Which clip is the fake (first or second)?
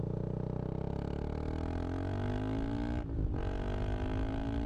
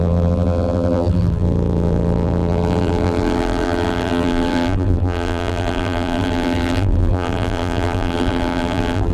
second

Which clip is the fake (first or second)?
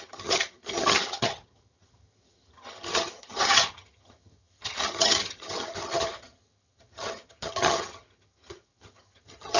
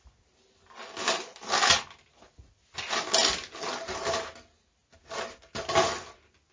first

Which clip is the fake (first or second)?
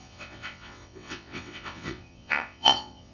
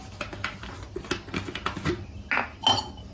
first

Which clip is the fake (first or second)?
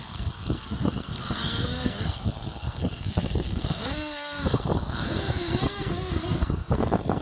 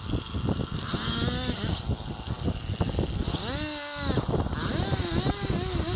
first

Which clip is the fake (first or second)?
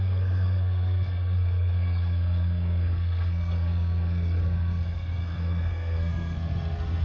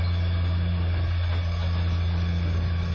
first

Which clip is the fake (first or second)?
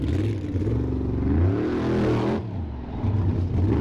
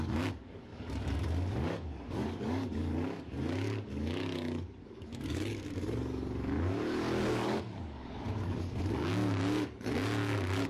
second